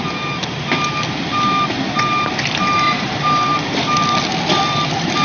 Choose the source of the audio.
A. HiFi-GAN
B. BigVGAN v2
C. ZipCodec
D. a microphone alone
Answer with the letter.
D